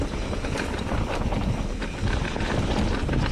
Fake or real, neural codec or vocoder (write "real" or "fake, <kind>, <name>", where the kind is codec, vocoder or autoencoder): real